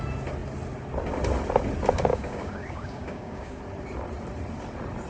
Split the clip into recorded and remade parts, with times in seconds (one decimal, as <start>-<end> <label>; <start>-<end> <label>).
0.0-2.1 recorded; 2.1-3.6 remade; 3.6-5.1 recorded